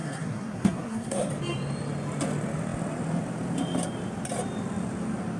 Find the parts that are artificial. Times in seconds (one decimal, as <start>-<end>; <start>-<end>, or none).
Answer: 0.0-1.3